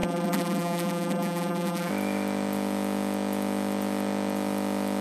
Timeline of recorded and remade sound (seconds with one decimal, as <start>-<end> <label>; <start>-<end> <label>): 0.0-1.9 remade; 1.9-5.0 recorded